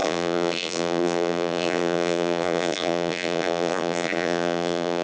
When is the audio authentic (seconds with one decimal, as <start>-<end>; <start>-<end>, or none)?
none